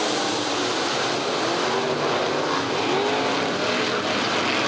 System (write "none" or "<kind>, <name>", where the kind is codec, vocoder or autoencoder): none